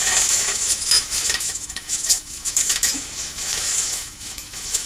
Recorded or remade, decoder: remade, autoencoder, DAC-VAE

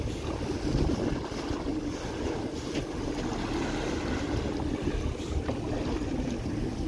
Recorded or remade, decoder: recorded